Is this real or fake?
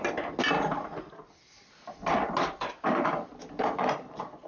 real